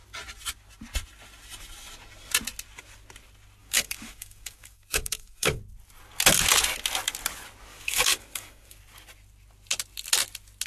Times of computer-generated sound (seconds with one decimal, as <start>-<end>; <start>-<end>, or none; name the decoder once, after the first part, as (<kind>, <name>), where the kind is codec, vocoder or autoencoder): 3.6-5.6 (codec, DAC); 7.7-8.8